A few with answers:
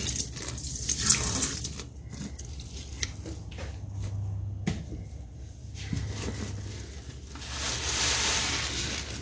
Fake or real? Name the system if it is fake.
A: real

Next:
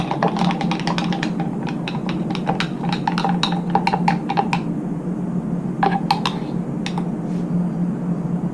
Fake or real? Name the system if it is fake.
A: real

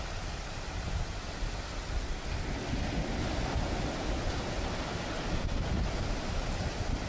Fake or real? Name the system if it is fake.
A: real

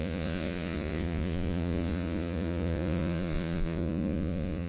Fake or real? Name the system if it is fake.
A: fake, vocoder, Vocos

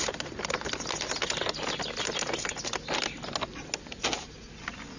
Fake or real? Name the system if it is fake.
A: real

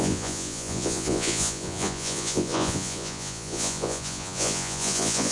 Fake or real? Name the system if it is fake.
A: fake, vocoder, Vocos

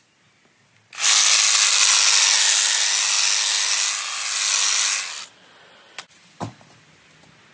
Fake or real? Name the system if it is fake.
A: real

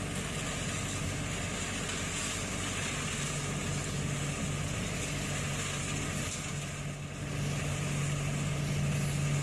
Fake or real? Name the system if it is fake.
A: real